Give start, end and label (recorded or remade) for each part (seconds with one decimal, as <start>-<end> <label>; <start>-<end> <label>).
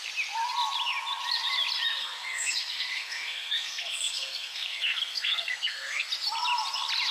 0.0-2.0 recorded; 2.0-6.1 remade; 6.1-7.1 recorded